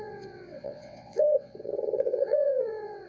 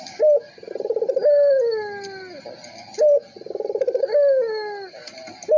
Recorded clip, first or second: second